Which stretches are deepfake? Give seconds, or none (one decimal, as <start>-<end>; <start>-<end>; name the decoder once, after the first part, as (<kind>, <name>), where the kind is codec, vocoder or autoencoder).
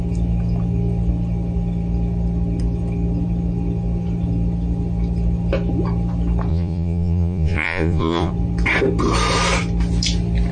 6.5-8.3 (vocoder, Vocos)